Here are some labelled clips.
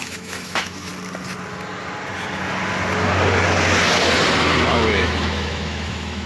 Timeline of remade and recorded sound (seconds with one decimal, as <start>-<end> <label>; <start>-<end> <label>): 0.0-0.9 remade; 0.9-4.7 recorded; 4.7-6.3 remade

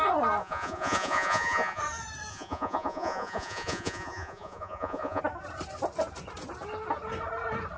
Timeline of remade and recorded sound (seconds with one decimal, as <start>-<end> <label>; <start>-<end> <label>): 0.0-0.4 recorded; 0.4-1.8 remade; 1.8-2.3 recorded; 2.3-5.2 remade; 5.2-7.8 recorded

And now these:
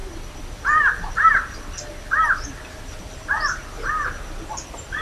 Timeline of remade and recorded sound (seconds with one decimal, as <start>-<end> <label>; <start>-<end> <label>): 0.0-5.0 recorded

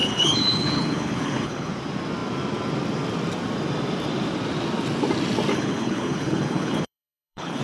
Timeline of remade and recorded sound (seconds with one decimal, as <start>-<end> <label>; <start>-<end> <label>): 0.0-1.7 remade; 1.7-5.5 recorded; 5.5-7.6 remade

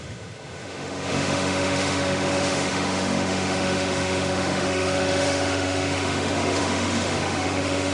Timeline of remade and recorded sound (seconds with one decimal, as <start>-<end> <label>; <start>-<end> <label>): 0.0-7.9 remade